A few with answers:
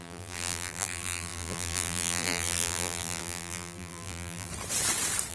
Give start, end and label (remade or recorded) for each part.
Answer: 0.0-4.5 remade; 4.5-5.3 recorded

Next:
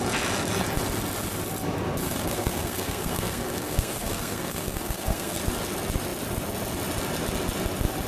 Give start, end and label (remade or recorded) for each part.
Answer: 0.0-2.0 recorded; 2.0-5.4 remade; 5.4-8.1 recorded

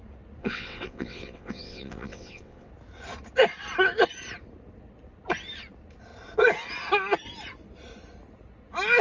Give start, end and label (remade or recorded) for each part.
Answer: 0.0-0.4 recorded; 0.4-2.7 remade; 2.7-9.0 recorded

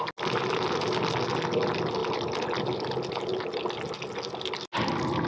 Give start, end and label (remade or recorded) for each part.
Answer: 0.0-5.3 recorded